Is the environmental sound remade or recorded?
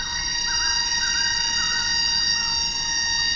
recorded